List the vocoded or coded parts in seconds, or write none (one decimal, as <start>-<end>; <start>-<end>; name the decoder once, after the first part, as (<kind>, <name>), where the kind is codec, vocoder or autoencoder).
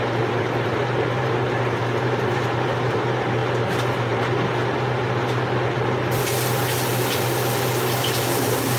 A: 0.0-4.6 (vocoder, BigVGAN v2)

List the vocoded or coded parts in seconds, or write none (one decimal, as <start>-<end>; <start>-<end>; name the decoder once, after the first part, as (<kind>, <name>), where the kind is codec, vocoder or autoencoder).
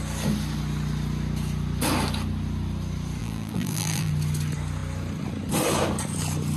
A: 3.2-4.1 (vocoder, BigVGAN v2)